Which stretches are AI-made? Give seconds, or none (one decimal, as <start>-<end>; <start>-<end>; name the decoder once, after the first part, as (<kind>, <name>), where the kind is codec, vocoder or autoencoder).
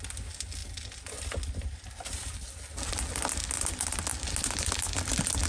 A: none